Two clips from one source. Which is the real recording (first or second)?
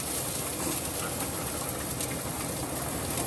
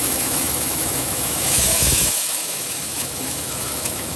first